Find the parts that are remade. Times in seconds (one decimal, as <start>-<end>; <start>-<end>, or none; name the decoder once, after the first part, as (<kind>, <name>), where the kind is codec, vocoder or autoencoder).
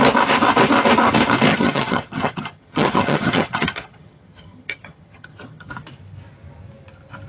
1.5-5.7 (vocoder, HiFi-GAN)